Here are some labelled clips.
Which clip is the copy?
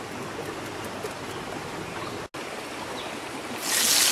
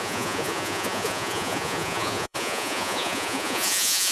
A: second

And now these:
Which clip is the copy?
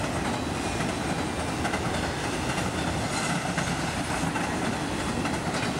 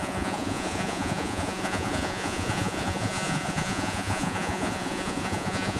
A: second